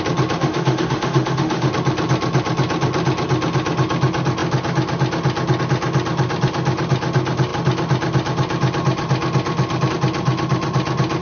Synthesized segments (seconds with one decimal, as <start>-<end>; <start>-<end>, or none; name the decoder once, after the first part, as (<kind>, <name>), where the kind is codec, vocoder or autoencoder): 0.4-1.7 (autoencoder, DAC-VAE)